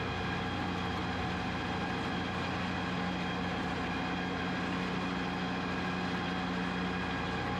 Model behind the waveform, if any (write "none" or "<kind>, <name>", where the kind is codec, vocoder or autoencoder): none